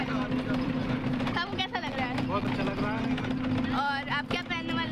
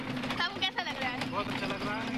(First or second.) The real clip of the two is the first